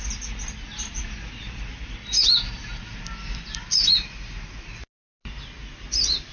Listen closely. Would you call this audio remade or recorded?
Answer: recorded